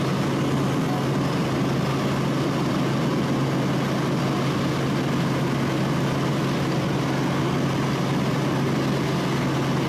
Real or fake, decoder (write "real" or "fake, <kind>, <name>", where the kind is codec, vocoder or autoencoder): real